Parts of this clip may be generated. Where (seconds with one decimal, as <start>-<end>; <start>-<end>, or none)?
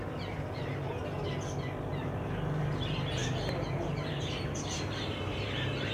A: 0.0-0.7; 1.9-5.9